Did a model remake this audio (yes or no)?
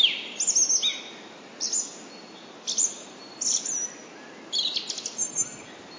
no